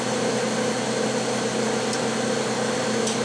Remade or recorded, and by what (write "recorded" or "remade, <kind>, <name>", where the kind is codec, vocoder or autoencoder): recorded